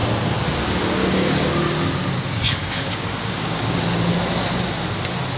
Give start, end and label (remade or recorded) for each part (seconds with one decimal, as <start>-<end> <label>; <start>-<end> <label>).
0.0-1.0 recorded; 1.0-1.5 remade; 1.5-2.6 recorded; 2.6-3.8 remade; 3.8-5.4 recorded